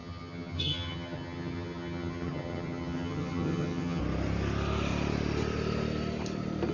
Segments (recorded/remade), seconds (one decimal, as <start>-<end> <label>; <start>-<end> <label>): 0.0-4.0 remade; 4.0-6.7 recorded